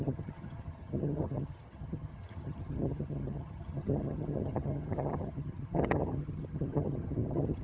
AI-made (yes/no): yes